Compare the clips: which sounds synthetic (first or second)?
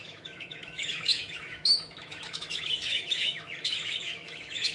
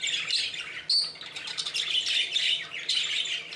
first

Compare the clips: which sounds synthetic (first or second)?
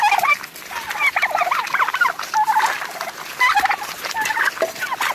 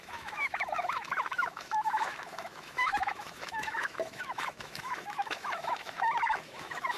second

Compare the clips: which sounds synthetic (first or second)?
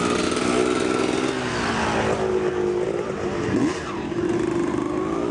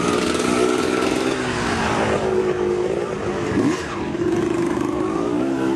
second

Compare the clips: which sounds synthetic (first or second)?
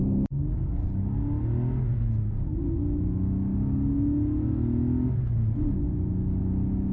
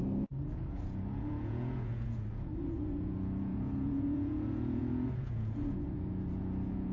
second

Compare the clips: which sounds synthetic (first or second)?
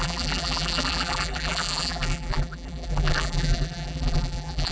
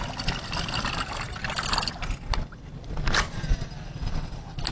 first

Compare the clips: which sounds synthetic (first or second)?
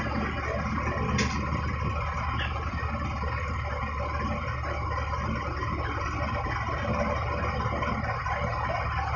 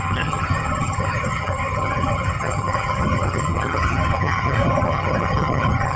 second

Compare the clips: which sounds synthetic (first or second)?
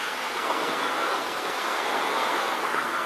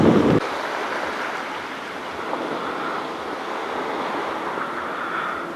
first